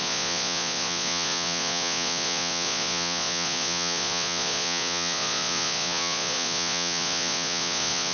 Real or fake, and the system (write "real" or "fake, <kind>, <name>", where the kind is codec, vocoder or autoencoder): fake, vocoder, Vocos